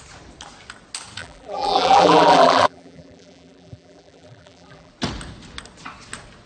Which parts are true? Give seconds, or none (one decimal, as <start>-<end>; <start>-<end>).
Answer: 0.0-1.2; 4.9-6.5